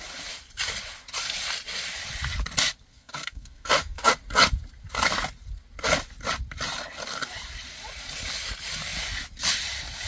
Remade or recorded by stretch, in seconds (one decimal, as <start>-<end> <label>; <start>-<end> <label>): 0.0-2.9 recorded; 2.9-4.1 remade; 4.1-10.1 recorded